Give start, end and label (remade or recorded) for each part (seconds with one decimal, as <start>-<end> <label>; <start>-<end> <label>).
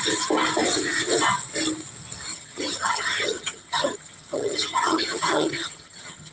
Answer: 0.0-2.3 recorded; 2.3-6.3 remade